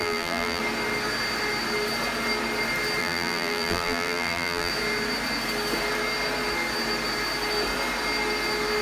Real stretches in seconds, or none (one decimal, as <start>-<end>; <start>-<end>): 0.6-3.0; 4.7-8.8